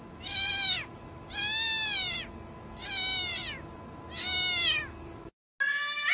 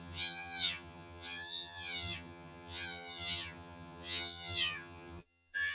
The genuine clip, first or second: first